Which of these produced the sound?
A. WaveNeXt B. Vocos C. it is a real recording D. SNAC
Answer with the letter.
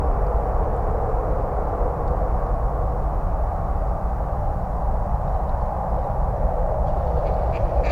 C